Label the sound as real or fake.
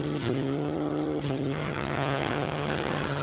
fake